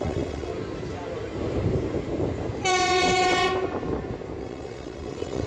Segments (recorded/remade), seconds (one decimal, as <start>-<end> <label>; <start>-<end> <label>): 0.0-0.5 remade; 0.5-2.7 recorded; 2.7-3.5 remade; 3.5-4.4 recorded; 4.4-5.5 remade